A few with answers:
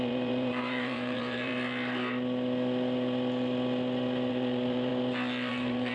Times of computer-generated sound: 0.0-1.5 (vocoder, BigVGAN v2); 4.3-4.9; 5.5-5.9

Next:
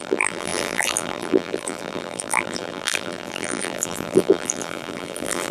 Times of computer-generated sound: 0.0-5.5 (vocoder, BigVGAN v2)

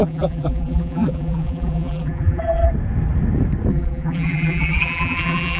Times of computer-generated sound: 0.0-2.7 (vocoder, BigVGAN v2); 3.7-5.6